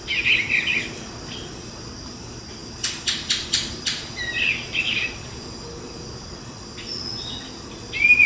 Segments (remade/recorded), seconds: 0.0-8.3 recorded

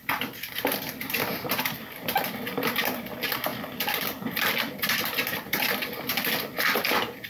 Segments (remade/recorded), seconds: 0.0-7.3 remade